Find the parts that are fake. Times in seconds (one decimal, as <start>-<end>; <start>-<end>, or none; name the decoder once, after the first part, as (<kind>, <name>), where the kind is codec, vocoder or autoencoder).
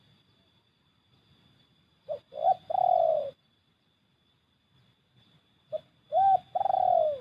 none